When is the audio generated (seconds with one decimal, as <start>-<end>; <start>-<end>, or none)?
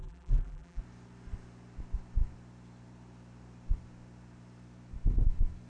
0.0-0.8